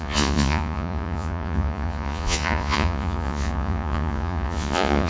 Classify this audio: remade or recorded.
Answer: remade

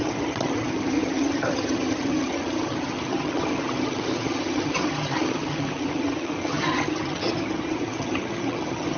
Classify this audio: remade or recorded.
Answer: remade